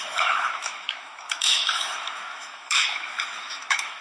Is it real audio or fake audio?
fake